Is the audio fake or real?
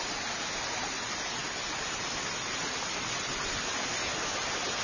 real